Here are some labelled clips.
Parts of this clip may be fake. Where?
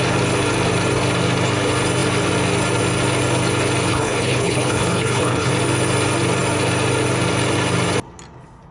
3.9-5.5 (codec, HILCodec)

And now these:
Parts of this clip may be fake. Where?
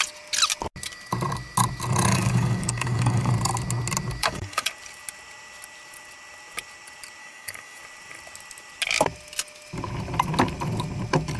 2.1-3.3 (codec, DAC); 4.2-4.7; 7.2-7.8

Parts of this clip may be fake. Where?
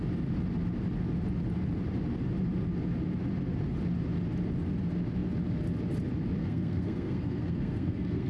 6.4-8.3 (codec, SNAC)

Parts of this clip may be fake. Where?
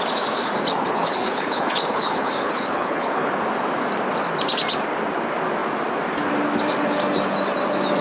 0.7-3.3 (codec, HILCodec)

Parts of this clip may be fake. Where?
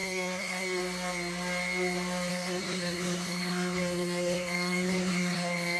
0.0-0.8 (codec, SNAC); 2.3-5.8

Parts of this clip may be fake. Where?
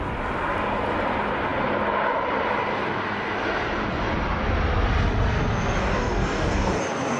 5.8-6.8 (codec, DAC)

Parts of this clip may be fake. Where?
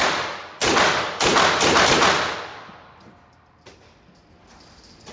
1.3-2.4 (vocoder, BigVGAN v2)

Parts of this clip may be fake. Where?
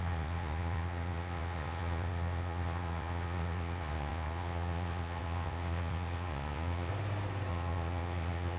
0.0-6.9 (vocoder, Vocos); 7.5-8.6